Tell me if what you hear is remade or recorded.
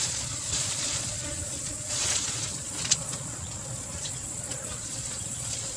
remade